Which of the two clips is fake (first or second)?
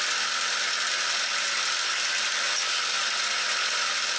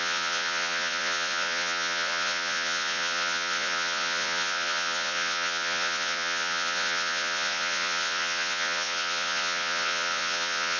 second